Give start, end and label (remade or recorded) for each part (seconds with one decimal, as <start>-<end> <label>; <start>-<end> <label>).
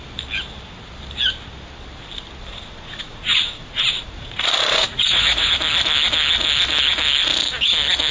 0.0-2.5 recorded; 2.5-5.5 remade; 5.5-8.1 recorded